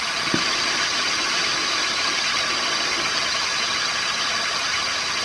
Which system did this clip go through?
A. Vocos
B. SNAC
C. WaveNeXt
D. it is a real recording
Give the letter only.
D